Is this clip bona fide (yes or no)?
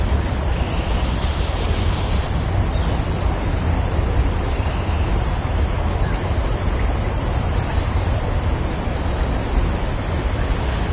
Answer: yes